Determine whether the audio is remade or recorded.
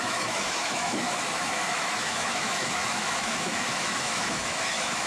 remade